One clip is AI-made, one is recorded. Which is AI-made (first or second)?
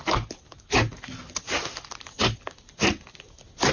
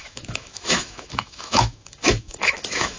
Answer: second